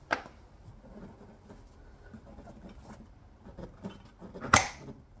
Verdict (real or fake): real